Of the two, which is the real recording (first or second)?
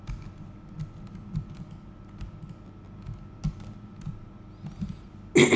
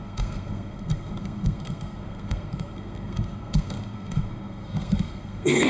first